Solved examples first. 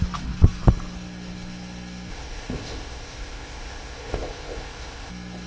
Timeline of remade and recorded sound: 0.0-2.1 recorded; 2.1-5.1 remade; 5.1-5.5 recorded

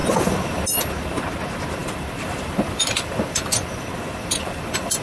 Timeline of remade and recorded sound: 0.0-0.8 remade; 0.8-1.8 recorded; 1.8-5.0 remade

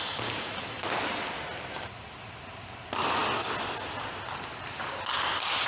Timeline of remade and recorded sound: 0.0-5.7 recorded

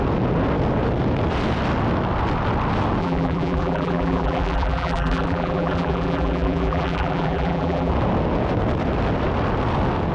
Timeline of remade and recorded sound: 0.0-3.0 recorded; 3.0-7.9 remade; 7.9-10.1 recorded

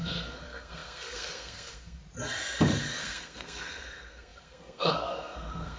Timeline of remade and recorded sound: 0.0-2.0 remade; 2.0-3.0 recorded; 3.0-5.8 remade